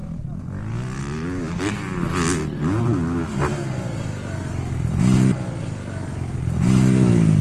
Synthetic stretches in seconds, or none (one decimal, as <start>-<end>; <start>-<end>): none

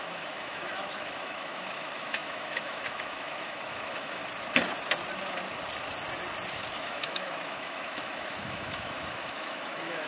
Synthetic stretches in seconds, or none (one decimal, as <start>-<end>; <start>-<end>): 0.0-4.2; 6.7-10.1

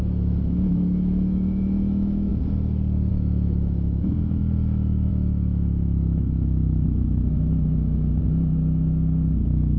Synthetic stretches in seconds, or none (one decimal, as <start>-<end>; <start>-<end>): 0.0-2.3; 3.1-9.8

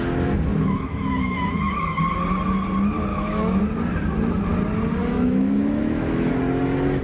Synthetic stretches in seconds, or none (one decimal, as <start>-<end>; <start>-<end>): 0.5-2.0; 3.1-3.6; 5.0-6.3

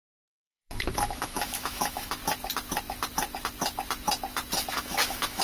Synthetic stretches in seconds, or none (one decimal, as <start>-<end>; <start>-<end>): 0.0-2.2; 4.7-5.4

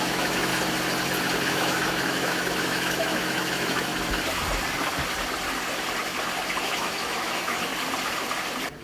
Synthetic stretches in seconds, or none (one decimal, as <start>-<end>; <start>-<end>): 0.0-0.5; 1.5-3.9; 6.6-7.7

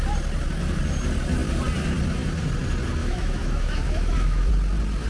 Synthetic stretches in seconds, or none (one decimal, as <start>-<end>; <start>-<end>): 3.0-4.5